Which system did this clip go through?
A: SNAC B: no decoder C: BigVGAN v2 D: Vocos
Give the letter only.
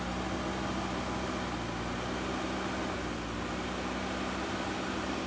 B